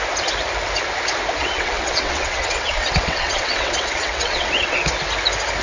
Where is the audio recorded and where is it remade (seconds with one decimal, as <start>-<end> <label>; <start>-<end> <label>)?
0.0-1.4 recorded; 1.4-4.8 remade; 4.8-5.6 recorded